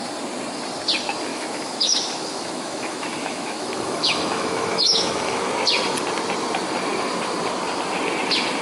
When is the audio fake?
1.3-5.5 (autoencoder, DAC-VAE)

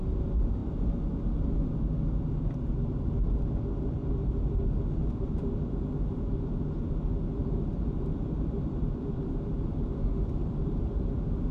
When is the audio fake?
4.0-4.6 (vocoder, BigVGAN v2); 5.0-6.6; 7.4-11.1

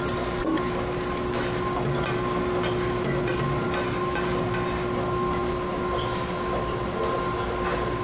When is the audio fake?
none

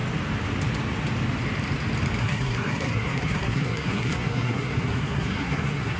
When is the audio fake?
2.2-6.0 (codec, SNAC)

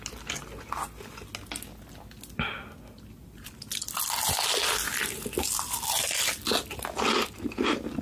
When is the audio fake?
4.9-6.4 (vocoder, BigVGAN v2)